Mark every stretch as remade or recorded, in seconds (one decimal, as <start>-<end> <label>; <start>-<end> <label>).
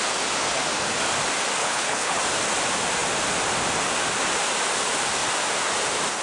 0.0-1.6 recorded; 1.6-2.2 remade; 2.2-6.2 recorded